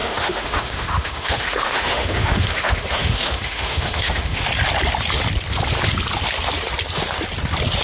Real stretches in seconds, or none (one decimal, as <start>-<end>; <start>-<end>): 4.5-7.8